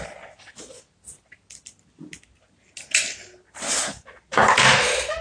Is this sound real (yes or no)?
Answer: yes